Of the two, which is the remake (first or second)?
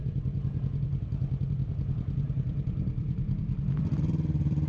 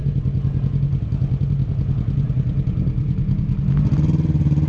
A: first